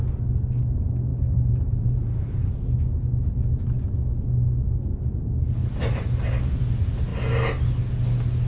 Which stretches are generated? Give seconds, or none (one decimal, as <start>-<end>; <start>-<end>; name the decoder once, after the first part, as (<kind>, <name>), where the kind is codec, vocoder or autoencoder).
1.1-2.5 (vocoder, BigVGAN v2); 5.6-6.3